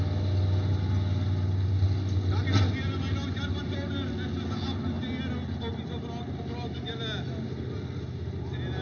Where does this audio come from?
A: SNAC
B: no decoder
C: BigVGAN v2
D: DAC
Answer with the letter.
B